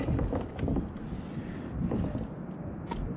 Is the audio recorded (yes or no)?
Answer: yes